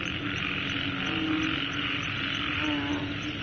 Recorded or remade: recorded